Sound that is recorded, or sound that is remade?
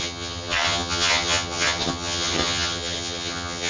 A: remade